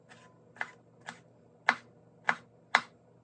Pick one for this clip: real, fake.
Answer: real